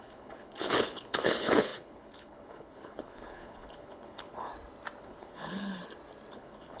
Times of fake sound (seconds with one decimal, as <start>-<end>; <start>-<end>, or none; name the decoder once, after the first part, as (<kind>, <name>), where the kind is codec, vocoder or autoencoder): 0.0-4.5 (codec, HILCodec); 5.0-5.8; 6.3-6.8